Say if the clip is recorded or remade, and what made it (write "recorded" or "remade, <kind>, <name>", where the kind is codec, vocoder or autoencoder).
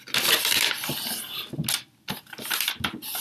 recorded